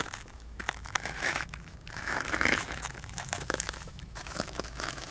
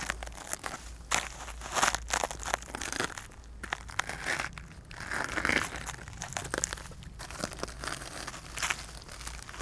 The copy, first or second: first